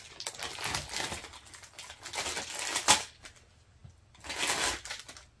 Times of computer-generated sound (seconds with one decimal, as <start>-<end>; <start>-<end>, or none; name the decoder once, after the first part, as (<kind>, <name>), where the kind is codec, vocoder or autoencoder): none